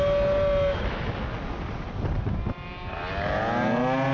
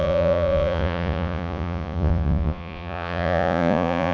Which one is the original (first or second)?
first